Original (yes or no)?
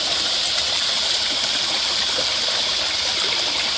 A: no